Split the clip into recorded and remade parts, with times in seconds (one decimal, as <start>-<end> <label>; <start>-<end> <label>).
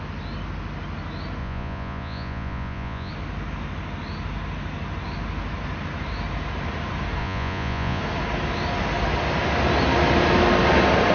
0.0-1.4 recorded; 1.4-3.1 remade; 3.1-7.2 recorded; 7.2-8.0 remade; 8.0-11.1 recorded